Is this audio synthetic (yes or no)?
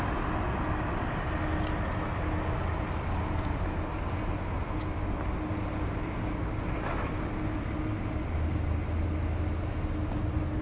no